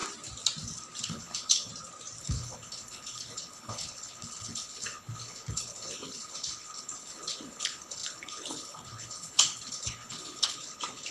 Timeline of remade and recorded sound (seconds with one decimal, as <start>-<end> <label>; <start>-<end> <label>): 0.0-1.0 recorded; 1.0-1.7 remade; 1.7-2.2 recorded; 2.2-11.1 remade